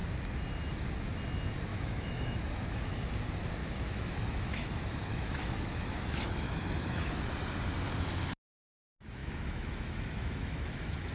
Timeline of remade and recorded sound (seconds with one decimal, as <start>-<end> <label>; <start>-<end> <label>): 0.0-1.7 recorded; 1.7-3.1 remade; 3.1-3.6 recorded; 3.6-7.2 remade; 7.2-9.2 recorded; 9.2-11.1 remade